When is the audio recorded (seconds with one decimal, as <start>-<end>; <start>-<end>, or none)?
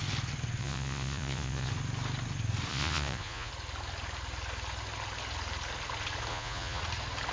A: 0.0-0.6; 1.7-2.7; 3.5-6.3; 6.8-7.3